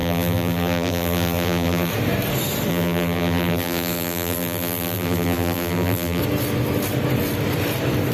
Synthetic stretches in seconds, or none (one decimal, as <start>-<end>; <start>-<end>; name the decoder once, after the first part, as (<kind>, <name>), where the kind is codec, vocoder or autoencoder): 0.0-1.9 (vocoder, BigVGAN v2); 2.7-6.2